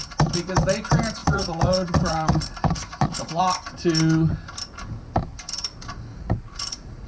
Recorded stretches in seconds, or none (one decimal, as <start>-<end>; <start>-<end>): 0.0-1.2; 3.4-6.1